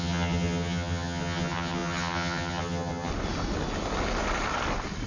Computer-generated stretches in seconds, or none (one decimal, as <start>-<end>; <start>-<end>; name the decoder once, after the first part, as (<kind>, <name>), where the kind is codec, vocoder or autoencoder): 0.0-3.1 (vocoder, HiFi-GAN)